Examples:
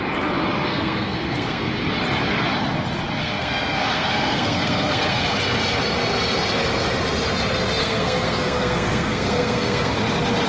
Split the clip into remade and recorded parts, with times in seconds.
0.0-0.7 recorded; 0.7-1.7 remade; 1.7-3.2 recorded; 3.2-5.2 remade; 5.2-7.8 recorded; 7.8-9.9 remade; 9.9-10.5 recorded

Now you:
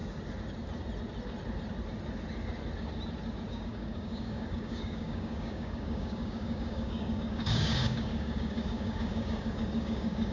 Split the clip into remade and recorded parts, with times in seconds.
0.0-3.5 recorded; 3.5-10.3 remade

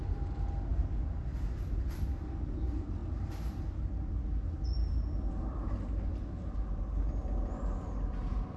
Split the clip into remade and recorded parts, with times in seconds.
0.0-8.6 recorded

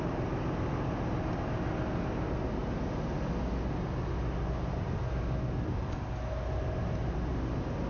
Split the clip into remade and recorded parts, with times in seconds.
0.0-7.9 recorded